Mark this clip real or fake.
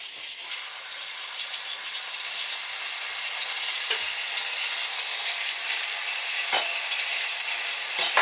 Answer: fake